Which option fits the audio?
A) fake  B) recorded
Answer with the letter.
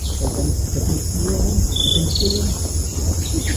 B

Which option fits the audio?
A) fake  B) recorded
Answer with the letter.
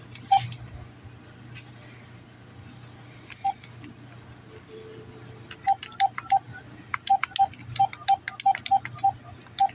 B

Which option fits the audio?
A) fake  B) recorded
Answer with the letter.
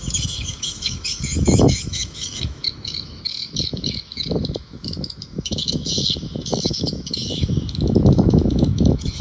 A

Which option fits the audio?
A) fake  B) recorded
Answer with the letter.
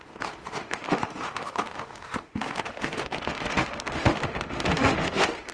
A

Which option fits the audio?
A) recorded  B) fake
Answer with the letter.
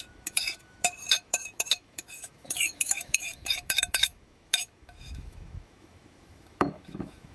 B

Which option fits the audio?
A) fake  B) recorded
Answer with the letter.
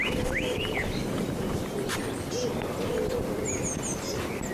B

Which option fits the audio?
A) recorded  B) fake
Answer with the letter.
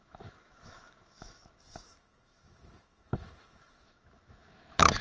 B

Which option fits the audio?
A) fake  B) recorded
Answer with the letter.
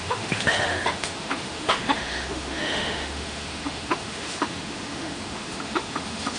A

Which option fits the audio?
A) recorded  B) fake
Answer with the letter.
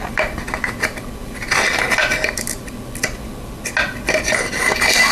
A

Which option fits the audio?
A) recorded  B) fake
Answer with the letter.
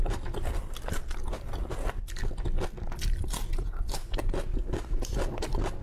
A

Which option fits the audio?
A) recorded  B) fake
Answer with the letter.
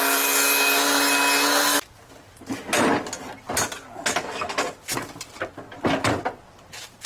A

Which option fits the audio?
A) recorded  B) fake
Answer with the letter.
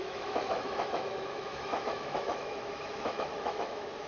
B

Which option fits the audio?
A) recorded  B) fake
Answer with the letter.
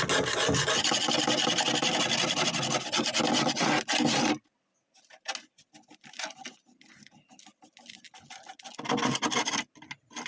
A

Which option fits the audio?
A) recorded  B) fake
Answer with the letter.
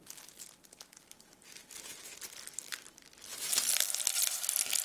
A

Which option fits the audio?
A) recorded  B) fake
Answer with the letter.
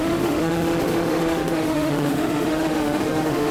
B